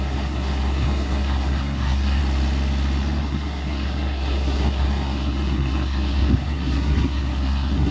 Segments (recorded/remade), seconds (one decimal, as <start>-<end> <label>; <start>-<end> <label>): 0.0-2.2 remade; 2.2-3.2 recorded; 3.2-7.9 remade